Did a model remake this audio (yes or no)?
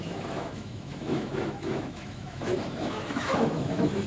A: yes